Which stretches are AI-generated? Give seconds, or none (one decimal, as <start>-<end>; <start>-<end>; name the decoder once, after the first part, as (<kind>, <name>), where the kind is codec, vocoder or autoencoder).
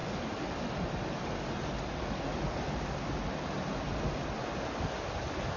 none